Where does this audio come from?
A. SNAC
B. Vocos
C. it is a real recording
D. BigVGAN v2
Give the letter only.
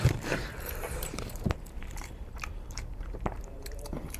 D